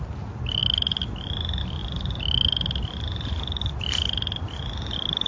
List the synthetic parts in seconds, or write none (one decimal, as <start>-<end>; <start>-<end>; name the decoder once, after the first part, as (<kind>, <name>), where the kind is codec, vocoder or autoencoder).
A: none